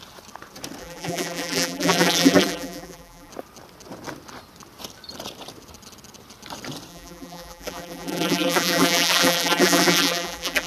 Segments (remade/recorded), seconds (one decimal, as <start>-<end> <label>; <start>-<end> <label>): 0.0-0.8 recorded; 0.8-3.3 remade; 3.3-6.9 recorded; 6.9-10.7 remade